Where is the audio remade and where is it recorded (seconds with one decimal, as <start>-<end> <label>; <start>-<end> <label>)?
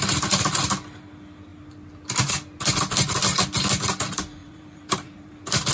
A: 0.0-4.4 recorded; 4.4-5.3 remade; 5.3-5.7 recorded